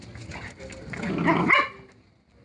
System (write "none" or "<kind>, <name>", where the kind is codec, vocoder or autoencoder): none